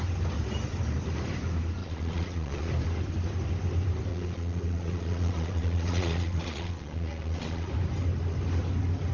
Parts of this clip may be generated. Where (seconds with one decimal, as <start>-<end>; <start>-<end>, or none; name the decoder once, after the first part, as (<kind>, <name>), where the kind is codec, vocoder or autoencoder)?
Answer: 1.8-2.7 (vocoder, Vocos); 4.1-7.7